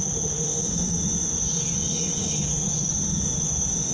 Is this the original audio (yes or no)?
no